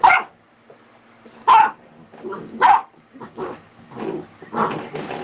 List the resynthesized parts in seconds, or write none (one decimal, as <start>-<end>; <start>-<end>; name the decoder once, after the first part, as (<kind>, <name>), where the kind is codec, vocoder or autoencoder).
1.4-3.9 (codec, DAC)